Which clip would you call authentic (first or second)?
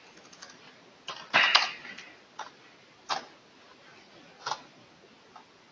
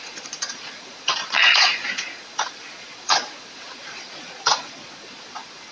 first